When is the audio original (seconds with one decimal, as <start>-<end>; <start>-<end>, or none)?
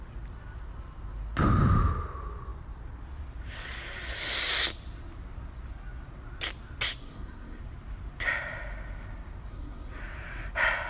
0.0-7.0; 7.6-9.5; 10.0-10.9